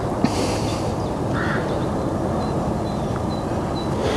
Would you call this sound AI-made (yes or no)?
no